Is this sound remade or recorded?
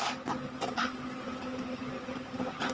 recorded